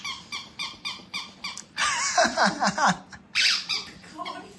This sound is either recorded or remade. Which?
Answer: remade